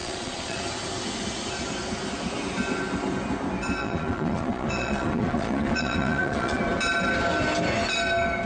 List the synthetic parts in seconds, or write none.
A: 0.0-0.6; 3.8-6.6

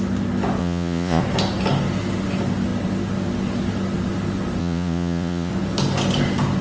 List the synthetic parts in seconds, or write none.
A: 0.6-1.2; 4.6-5.5

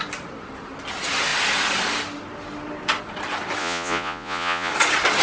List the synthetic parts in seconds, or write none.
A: 3.6-4.7

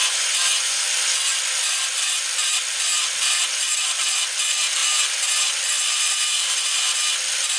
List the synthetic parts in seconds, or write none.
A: 0.0-0.8

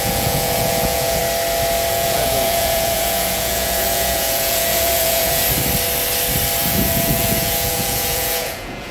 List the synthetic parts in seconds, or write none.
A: 0.0-1.2; 1.9-5.4; 6.6-8.9

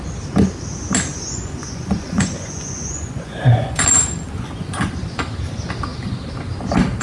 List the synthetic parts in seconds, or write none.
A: 1.1-4.9

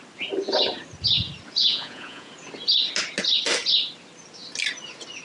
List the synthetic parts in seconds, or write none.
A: 1.6-2.3

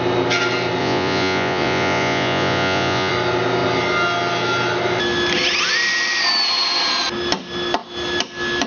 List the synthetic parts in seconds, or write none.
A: 0.8-3.1